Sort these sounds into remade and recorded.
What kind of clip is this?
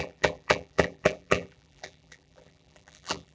remade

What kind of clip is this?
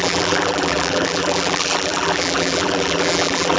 remade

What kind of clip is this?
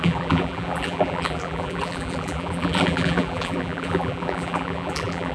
remade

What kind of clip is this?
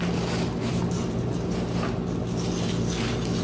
recorded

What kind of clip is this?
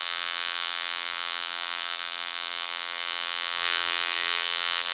remade